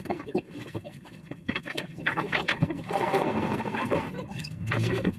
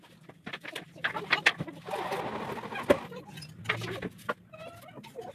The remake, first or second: first